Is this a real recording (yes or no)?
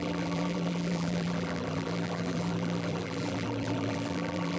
no